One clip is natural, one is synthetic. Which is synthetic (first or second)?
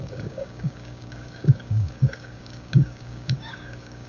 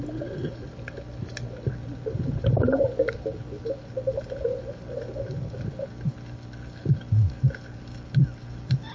first